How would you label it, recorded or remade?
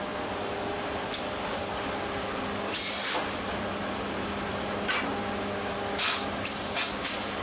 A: recorded